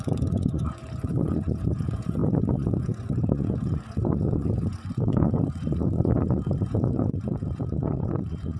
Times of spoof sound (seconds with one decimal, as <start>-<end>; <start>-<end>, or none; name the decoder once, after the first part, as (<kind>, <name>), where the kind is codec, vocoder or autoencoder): 0.0-8.6 (vocoder, Vocos)